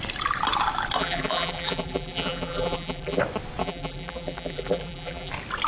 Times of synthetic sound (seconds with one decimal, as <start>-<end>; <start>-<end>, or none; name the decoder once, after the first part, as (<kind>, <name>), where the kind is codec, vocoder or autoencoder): 1.0-3.2 (vocoder, BigVGAN v2); 3.6-5.3

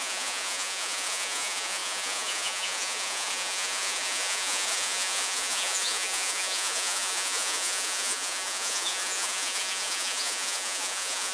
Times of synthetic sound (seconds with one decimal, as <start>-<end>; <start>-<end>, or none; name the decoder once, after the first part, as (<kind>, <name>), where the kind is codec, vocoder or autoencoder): 0.0-11.3 (vocoder, Vocos)